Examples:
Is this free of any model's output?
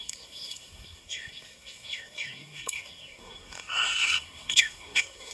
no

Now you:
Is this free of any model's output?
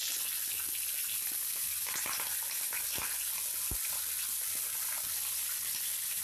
yes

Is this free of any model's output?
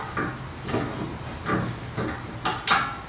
yes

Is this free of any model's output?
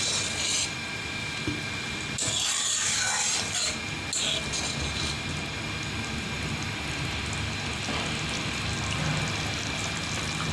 yes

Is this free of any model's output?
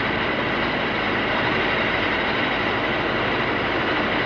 yes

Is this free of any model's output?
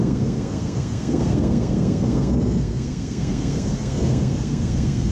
no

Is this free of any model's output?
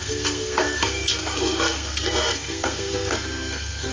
no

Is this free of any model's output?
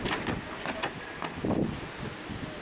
yes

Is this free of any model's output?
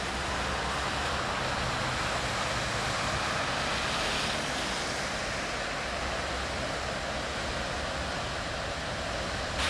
yes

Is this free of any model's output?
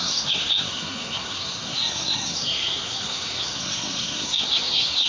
no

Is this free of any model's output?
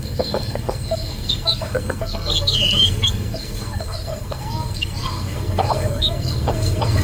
no